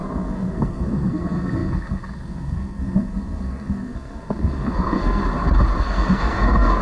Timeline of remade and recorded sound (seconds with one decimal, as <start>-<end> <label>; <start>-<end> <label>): 0.0-5.2 remade; 5.2-5.8 recorded; 5.8-6.8 remade